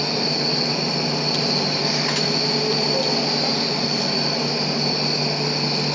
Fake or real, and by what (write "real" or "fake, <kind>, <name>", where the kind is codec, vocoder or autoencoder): real